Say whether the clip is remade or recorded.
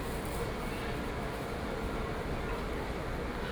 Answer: recorded